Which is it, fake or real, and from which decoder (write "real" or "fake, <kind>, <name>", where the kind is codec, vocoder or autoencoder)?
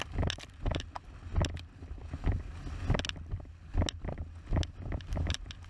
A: real